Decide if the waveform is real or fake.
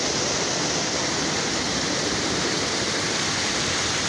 real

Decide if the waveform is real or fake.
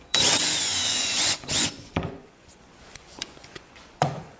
fake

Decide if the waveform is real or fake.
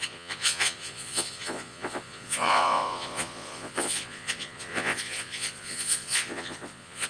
fake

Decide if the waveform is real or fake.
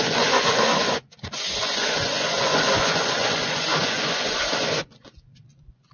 fake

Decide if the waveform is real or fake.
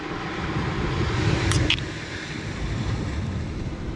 real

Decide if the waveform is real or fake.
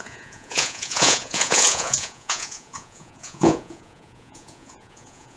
fake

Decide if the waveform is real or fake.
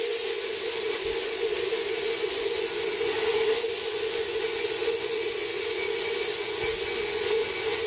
fake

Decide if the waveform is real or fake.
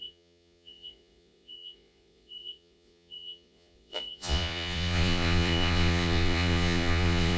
fake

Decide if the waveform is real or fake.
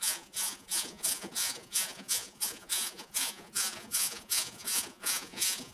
fake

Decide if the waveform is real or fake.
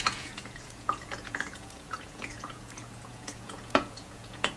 fake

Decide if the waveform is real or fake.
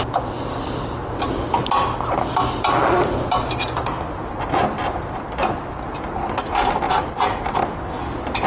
real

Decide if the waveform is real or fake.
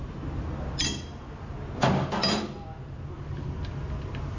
real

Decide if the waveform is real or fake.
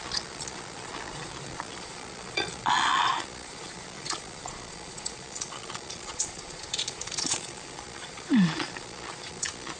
fake